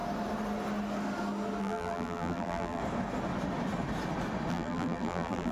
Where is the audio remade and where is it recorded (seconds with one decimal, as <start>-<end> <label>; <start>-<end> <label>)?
0.0-1.6 recorded; 1.6-2.8 remade; 2.8-4.5 recorded; 4.5-5.5 remade